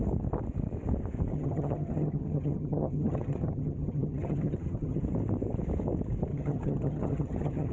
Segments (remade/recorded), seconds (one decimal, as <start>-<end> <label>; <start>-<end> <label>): 0.0-1.3 recorded; 1.3-5.0 remade; 5.0-6.3 recorded; 6.3-7.7 remade